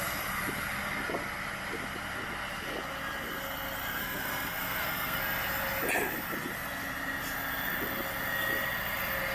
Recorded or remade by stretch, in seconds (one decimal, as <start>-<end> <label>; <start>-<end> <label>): 0.0-4.0 recorded; 4.0-5.2 remade; 5.2-9.3 recorded

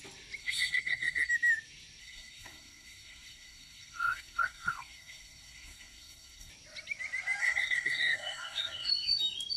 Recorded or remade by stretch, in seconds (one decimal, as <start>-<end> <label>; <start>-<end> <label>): 0.0-0.4 recorded; 0.4-1.3 remade; 1.3-2.0 recorded; 2.0-6.5 remade; 6.5-7.4 recorded; 7.4-8.9 remade; 8.9-9.6 recorded